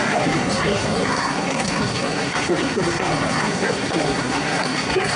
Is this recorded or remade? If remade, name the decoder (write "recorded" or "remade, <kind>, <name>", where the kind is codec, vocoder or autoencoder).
remade, codec, SNAC